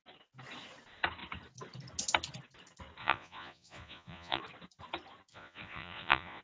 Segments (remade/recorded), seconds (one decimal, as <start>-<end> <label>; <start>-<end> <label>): 0.0-3.0 recorded; 3.0-4.4 remade; 4.4-5.3 recorded; 5.3-6.4 remade